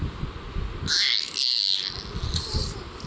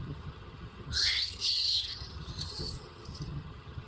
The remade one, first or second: second